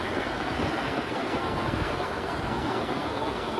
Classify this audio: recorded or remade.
remade